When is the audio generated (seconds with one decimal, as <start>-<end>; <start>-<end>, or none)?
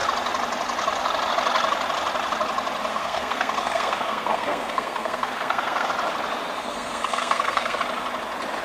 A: 2.9-5.9; 6.6-7.8